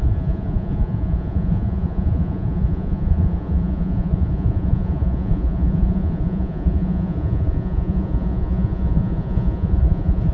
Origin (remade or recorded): remade